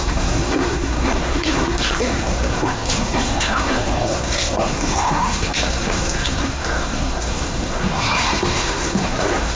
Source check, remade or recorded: remade